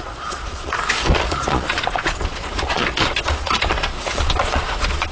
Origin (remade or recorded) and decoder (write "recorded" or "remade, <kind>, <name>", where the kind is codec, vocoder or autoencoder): remade, vocoder, Vocos